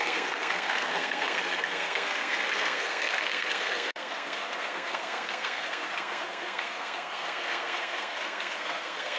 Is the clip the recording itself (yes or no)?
no